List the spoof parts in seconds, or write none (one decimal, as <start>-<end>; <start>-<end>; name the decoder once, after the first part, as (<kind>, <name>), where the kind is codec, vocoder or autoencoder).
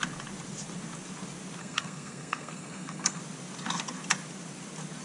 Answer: 1.6-3.2 (codec, SNAC)